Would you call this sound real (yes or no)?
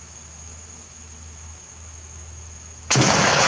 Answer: no